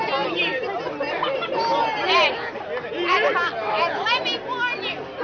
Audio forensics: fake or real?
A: real